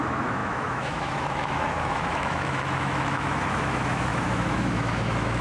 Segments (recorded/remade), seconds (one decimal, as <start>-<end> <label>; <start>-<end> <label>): 0.0-5.4 remade